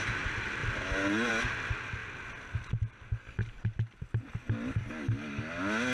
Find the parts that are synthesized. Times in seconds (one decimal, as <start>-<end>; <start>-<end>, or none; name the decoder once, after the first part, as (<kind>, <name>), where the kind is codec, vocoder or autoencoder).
none